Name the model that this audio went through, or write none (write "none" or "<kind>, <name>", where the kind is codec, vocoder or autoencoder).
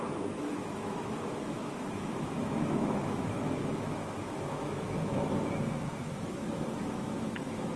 autoencoder, DAC-VAE